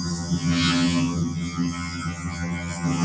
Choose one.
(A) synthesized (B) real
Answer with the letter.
A